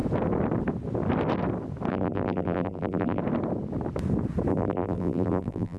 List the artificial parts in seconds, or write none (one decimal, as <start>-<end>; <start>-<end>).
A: 1.9-3.2; 4.5-5.8